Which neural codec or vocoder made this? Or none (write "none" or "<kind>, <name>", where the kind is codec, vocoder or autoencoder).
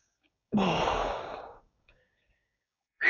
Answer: codec, DAC